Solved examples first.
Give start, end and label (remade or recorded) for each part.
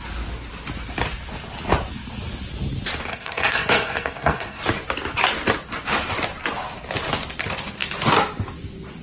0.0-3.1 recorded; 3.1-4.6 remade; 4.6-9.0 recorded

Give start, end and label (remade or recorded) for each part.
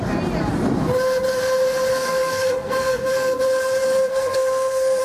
0.0-1.9 recorded; 1.9-3.4 remade; 3.4-4.1 recorded; 4.1-5.0 remade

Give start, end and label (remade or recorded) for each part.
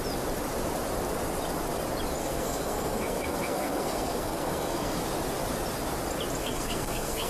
0.0-2.2 recorded; 2.2-5.0 remade; 5.0-6.4 recorded; 6.4-7.3 remade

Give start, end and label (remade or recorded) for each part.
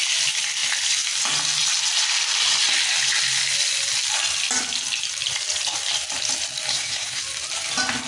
0.0-6.7 recorded; 6.7-7.2 remade; 7.2-8.1 recorded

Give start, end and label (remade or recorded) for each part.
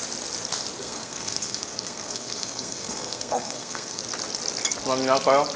0.0-0.8 recorded; 0.8-4.0 remade; 4.0-5.6 recorded